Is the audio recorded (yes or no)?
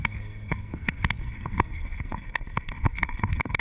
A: no